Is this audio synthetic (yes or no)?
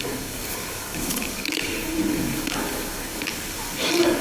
yes